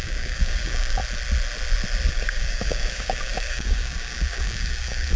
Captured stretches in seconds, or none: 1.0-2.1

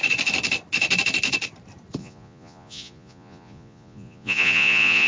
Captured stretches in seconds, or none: 0.0-2.0